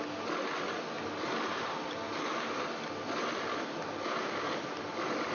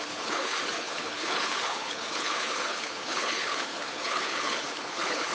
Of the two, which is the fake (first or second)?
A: second